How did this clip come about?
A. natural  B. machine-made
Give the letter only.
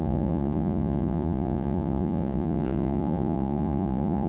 B